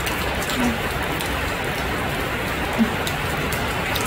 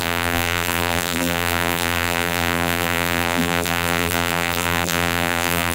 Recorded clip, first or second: first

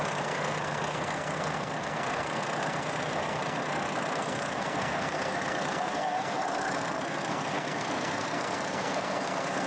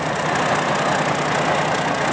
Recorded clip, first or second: second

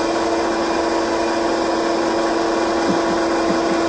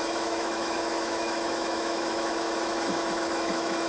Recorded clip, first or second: first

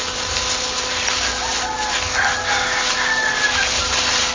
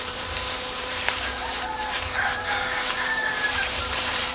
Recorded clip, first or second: first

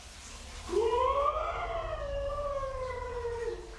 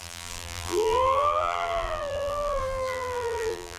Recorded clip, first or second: first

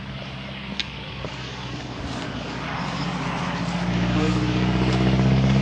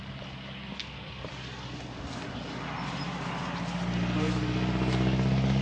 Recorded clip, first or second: second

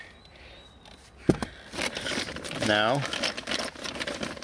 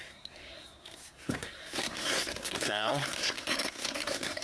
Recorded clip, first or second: first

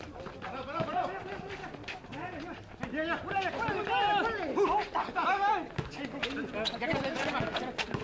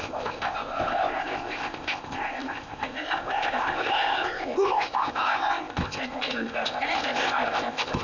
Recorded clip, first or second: first